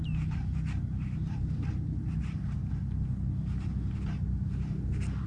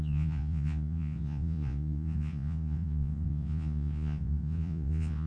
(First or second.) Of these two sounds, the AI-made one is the second